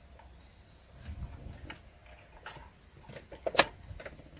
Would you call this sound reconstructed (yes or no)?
no